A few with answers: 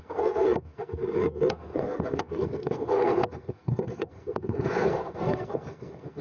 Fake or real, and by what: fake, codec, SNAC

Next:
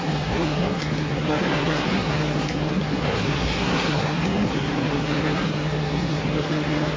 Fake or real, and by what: fake, codec, SNAC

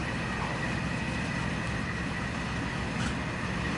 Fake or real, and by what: real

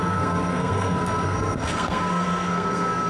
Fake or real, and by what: fake, codec, SNAC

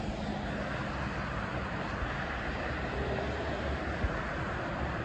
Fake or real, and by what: real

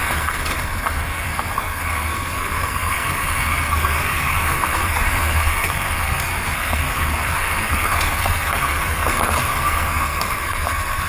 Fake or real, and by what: fake, codec, SNAC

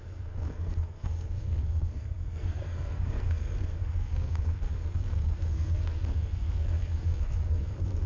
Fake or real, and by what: fake, codec, SNAC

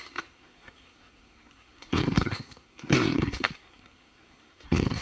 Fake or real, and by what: fake, codec, SNAC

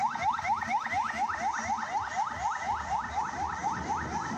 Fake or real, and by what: real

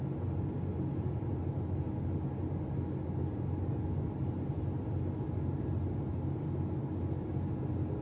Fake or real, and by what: real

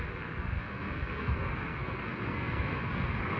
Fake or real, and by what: fake, codec, SNAC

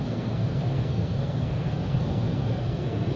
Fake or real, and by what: fake, codec, SNAC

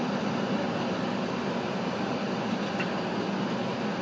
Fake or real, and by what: real